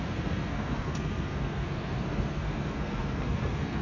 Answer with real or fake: fake